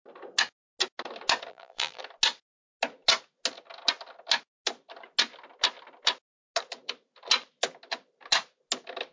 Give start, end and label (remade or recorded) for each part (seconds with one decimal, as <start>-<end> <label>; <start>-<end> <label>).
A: 0.0-1.5 recorded; 1.5-2.0 remade; 2.0-9.1 recorded